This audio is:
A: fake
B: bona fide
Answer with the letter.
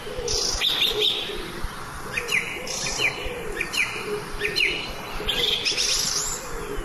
A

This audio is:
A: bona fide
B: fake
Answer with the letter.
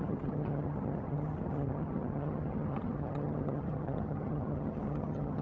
B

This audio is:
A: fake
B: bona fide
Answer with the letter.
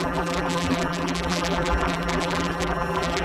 A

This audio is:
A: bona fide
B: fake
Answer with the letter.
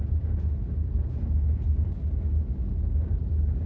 A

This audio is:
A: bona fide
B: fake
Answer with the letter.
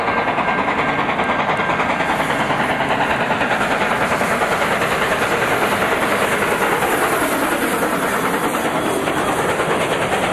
A